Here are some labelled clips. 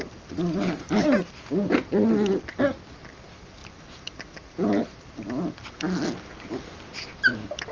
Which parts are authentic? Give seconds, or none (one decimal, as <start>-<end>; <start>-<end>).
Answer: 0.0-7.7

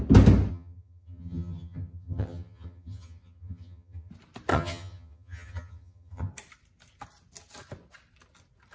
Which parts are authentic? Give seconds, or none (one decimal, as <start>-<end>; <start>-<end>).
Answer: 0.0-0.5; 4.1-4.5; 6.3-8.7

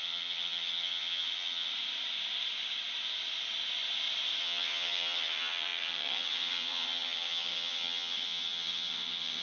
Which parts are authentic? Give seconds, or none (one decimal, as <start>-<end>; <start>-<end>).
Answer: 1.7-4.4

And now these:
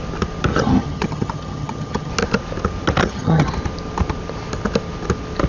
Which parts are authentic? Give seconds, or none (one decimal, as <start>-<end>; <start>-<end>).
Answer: 0.0-0.5; 2.1-3.0; 3.5-5.5

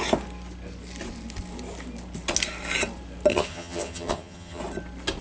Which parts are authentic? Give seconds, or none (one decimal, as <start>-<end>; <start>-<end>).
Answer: 0.0-3.3; 4.6-5.2

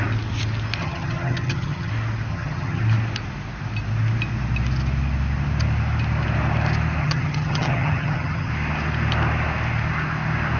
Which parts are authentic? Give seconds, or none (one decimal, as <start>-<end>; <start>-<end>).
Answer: 0.0-0.8; 1.9-2.3; 2.8-7.0; 8.5-10.6